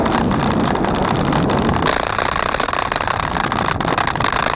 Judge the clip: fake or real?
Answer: real